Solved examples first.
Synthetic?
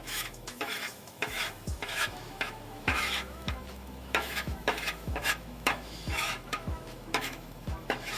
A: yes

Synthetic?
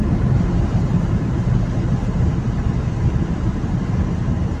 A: no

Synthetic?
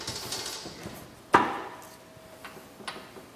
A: no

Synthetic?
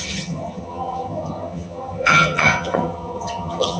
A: yes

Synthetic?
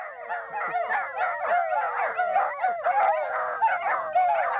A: no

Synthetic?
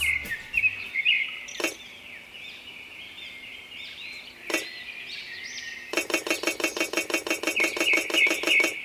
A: yes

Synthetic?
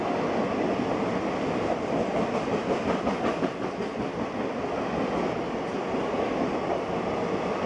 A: no